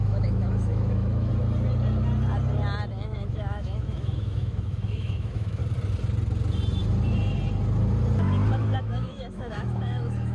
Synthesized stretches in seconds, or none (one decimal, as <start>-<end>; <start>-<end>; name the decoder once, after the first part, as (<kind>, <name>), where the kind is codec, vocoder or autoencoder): 0.0-1.3 (autoencoder, DAC-VAE); 2.9-5.6; 8.8-10.3